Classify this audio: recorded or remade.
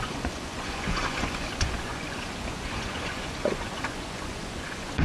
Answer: remade